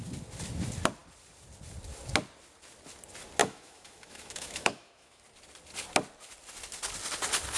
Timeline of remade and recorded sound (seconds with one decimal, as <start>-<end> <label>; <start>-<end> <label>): 0.0-3.4 recorded; 3.4-5.2 remade; 5.2-7.6 recorded